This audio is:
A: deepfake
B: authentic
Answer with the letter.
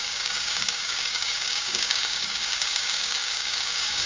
A